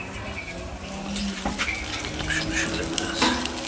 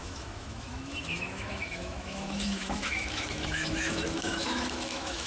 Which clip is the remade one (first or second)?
second